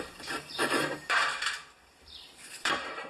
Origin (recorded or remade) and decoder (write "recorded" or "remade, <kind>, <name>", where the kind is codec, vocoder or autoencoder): remade, vocoder, BigVGAN v2